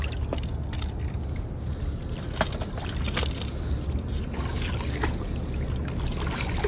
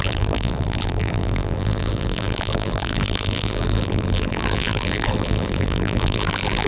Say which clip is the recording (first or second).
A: first